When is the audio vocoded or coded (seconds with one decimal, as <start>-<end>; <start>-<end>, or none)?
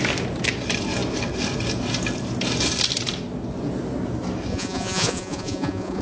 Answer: 4.5-6.0